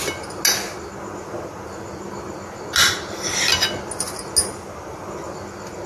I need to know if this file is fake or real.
real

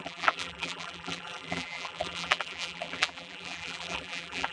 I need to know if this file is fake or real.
fake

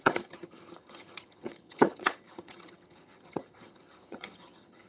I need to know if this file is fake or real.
fake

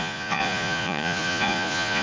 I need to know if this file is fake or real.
fake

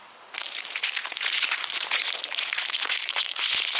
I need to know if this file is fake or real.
fake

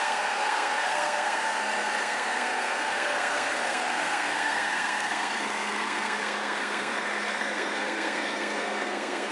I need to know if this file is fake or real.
fake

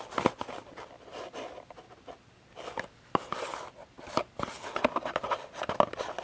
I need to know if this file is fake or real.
real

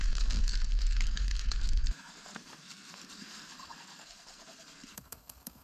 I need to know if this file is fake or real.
fake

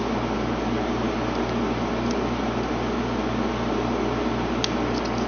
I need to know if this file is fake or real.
real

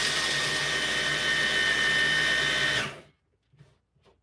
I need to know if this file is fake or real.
real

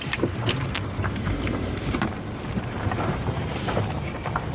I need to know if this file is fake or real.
fake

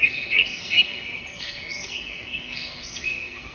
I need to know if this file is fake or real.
fake